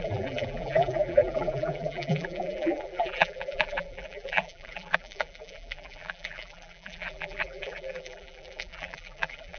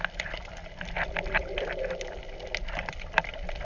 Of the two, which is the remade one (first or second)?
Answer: first